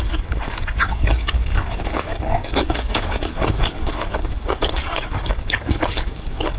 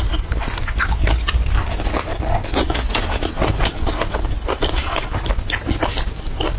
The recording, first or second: second